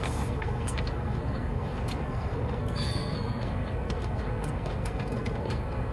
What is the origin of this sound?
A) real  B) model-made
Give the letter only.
B